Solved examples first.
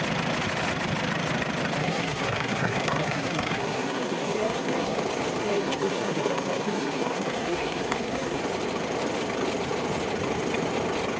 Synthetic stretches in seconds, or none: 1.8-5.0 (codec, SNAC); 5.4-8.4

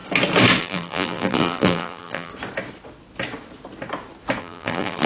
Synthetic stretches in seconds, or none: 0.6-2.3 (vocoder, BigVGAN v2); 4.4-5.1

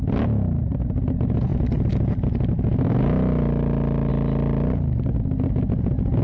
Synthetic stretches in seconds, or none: none

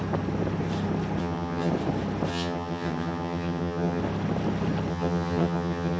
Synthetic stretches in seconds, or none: 1.2-1.7 (vocoder, HiFi-GAN); 2.3-4.0; 4.9-6.0

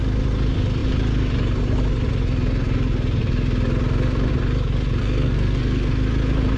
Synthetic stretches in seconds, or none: 5.0-5.9 (codec, SNAC)